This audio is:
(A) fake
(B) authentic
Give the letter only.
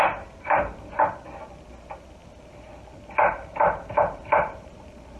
B